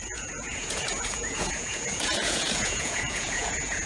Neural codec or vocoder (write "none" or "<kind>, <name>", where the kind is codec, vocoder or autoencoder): vocoder, Vocos